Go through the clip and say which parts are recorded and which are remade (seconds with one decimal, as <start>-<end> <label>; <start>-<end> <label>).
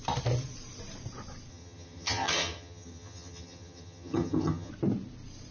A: 0.0-1.5 recorded; 1.5-4.7 remade; 4.7-5.5 recorded